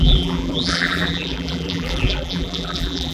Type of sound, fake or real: fake